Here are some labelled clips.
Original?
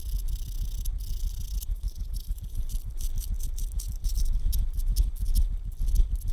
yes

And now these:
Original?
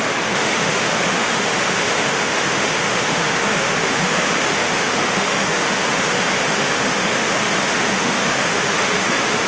no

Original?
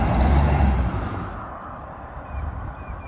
yes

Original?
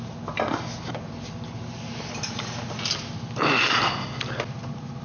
yes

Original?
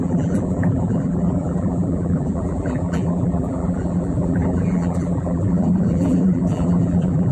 no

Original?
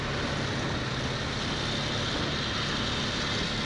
yes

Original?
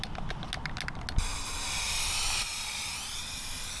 yes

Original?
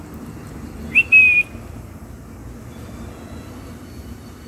yes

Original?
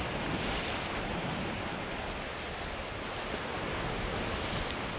yes